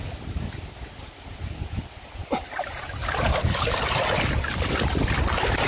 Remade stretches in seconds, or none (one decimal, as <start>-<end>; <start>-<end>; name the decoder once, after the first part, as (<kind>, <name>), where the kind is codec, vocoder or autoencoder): none